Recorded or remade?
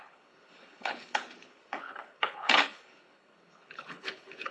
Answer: remade